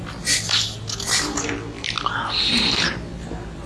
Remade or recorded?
recorded